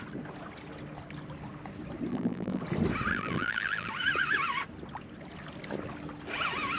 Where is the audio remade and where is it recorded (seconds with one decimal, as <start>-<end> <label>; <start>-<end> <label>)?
0.0-2.1 recorded; 2.1-2.6 remade; 2.6-3.1 recorded; 3.1-3.9 remade; 3.9-6.8 recorded